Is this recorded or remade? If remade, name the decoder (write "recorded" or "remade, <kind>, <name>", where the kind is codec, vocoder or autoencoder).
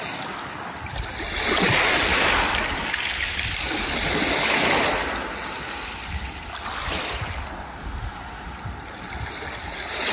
recorded